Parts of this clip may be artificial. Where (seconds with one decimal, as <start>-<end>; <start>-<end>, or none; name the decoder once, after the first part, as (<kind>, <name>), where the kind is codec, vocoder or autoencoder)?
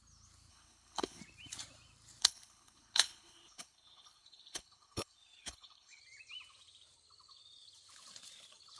0.5-1.2 (codec, HILCodec); 2.2-6.0